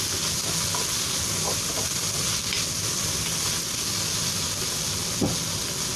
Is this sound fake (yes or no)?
no